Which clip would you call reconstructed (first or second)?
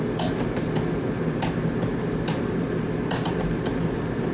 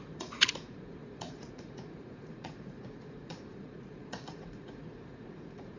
second